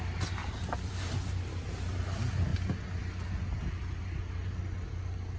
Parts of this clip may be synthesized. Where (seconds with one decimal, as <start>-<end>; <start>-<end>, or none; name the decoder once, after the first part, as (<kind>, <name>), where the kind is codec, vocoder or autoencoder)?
0.4-1.0 (vocoder, BigVGAN v2)